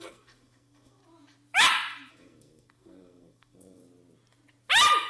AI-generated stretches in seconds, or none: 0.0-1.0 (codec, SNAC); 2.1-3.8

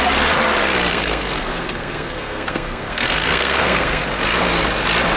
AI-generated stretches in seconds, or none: 0.9-4.0 (codec, SNAC)

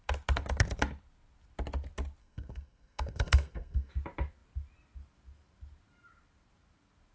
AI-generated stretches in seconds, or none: 2.2-3.9 (codec, SNAC)

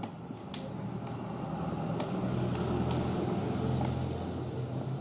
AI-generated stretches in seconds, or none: 2.2-3.4 (codec, DAC)

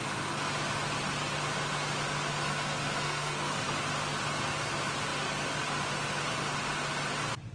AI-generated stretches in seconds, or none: 2.3-3.7 (codec, SNAC)

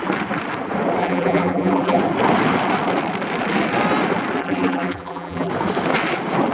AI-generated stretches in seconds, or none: 1.0-2.0 (vocoder, BigVGAN v2); 4.4-5.5

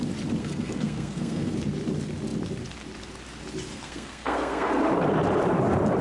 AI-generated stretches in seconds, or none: 0.4-1.5 (codec, SNAC); 3.7-4.7

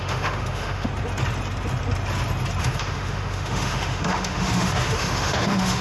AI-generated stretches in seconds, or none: 0.0-0.9 (autoencoder, DAC-VAE); 2.6-5.8